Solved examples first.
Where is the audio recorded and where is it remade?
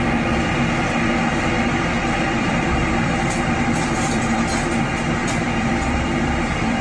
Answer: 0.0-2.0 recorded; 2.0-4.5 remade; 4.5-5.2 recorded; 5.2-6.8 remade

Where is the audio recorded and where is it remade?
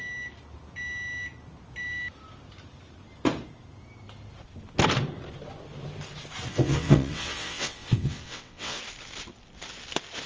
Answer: 0.0-6.5 recorded; 6.5-8.8 remade; 8.8-10.3 recorded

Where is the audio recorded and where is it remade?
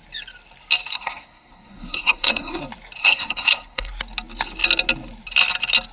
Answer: 0.0-0.9 recorded; 0.9-2.6 remade; 2.6-3.0 recorded; 3.0-3.9 remade; 3.9-5.9 recorded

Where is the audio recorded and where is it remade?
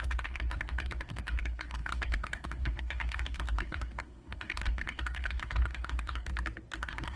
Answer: 0.0-6.3 remade; 6.3-6.8 recorded; 6.8-7.2 remade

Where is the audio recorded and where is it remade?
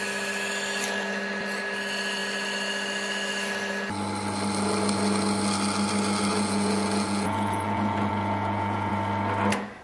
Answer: 0.0-6.3 recorded; 6.3-8.9 remade; 8.9-9.8 recorded